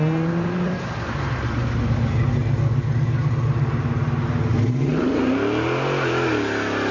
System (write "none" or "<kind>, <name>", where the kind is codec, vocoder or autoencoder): none